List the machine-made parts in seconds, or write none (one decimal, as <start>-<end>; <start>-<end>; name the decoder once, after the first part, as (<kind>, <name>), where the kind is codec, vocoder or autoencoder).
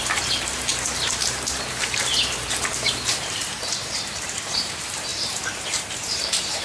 0.0-6.6 (vocoder, BigVGAN v2)